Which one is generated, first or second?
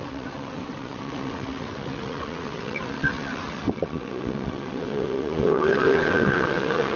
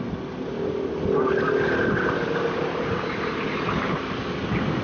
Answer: first